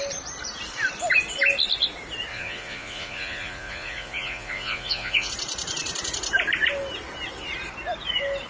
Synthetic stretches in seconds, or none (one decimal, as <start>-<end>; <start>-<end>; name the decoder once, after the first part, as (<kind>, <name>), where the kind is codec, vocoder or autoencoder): 2.3-5.3 (vocoder, Vocos)